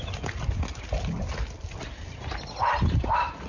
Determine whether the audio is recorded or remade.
recorded